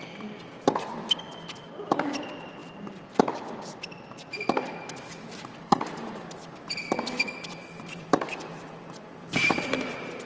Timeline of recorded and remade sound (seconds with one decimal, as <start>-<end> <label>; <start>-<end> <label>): 0.0-0.5 remade; 0.5-1.8 recorded; 1.8-2.6 remade; 2.6-7.0 recorded; 7.0-10.2 remade